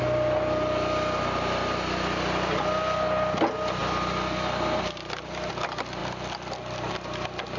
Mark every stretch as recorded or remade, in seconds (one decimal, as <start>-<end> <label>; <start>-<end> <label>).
0.0-7.6 recorded

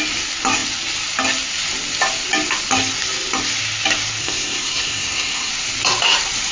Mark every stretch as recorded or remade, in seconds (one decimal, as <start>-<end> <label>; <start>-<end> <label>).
0.0-4.2 recorded; 4.2-5.5 remade; 5.5-6.5 recorded

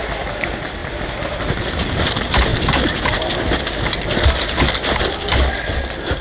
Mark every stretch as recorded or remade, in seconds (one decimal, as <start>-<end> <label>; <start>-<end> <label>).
0.0-6.2 recorded